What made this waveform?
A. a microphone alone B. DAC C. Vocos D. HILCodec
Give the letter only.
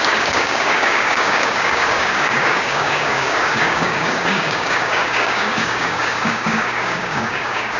B